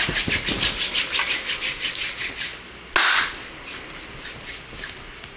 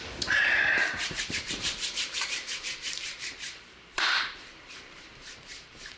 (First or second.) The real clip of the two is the first